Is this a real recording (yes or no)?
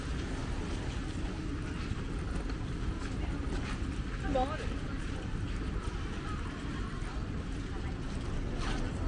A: yes